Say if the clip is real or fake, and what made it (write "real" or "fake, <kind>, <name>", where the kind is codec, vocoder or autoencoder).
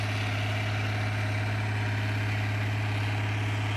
real